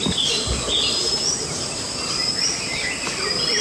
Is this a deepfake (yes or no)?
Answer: no